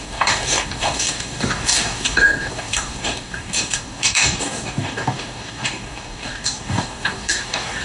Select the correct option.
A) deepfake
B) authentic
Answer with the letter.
A